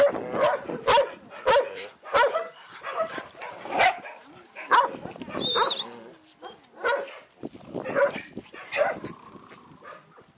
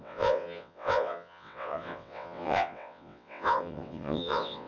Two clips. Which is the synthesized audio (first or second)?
second